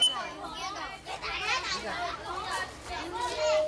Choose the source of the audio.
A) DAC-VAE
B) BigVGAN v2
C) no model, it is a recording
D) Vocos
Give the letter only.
C